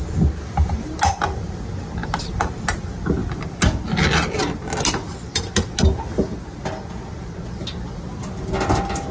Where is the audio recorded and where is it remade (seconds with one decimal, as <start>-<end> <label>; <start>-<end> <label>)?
0.0-9.1 recorded